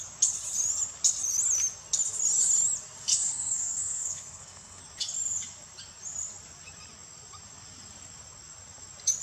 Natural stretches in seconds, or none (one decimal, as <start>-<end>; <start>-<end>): 0.0-3.1; 4.8-9.2